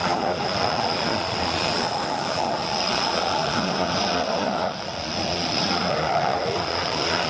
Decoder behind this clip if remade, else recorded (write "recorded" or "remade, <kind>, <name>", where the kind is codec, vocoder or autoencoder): remade, vocoder, Vocos